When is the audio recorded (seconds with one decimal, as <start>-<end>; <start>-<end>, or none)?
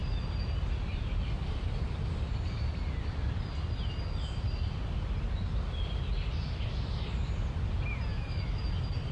0.0-8.1; 8.6-9.1